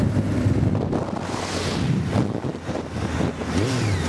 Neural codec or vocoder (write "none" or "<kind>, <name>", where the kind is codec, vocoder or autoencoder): none